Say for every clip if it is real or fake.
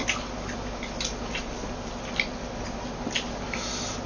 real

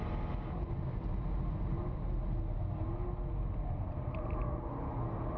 real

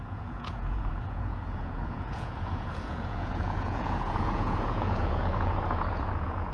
fake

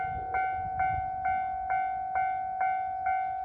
real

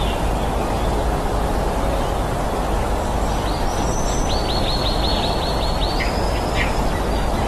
fake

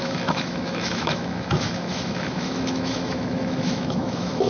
fake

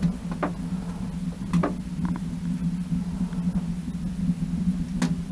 real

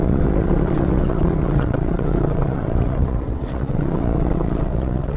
fake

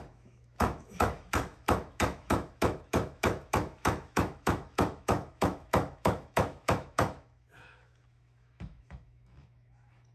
fake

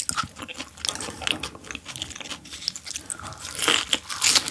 real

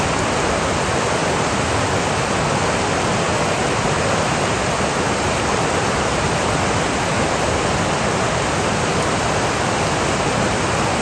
real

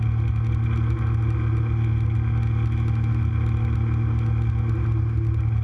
real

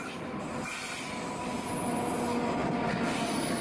real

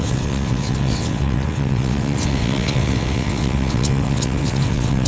fake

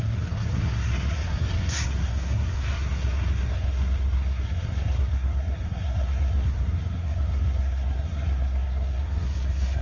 fake